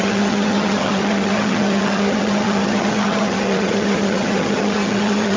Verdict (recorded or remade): remade